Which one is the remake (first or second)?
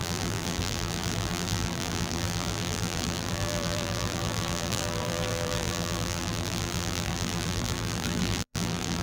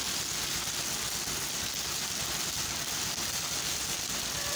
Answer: first